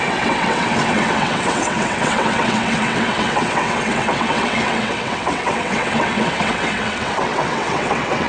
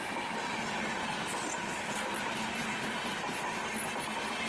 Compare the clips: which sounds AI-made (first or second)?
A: first